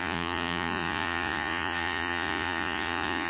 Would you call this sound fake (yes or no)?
yes